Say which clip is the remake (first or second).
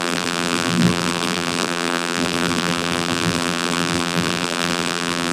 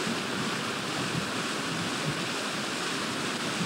first